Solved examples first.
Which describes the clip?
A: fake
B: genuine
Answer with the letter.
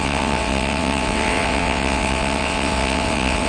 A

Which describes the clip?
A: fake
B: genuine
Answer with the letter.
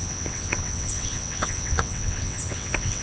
A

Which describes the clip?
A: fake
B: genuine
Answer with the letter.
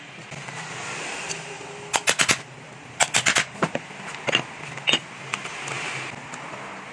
B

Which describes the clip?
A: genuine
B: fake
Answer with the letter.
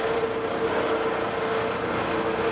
A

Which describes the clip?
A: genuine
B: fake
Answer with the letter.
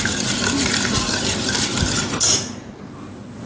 A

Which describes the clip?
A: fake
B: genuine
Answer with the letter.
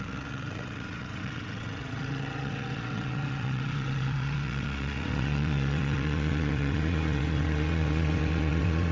A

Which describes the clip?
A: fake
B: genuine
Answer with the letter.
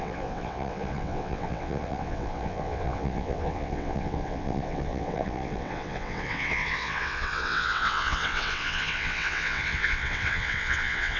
A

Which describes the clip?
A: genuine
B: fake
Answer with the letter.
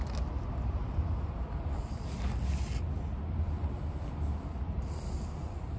A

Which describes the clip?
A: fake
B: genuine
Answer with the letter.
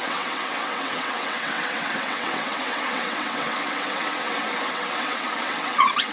A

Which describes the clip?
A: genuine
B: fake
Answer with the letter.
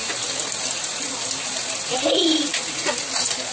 A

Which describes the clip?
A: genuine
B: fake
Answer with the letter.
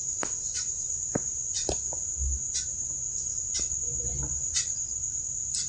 A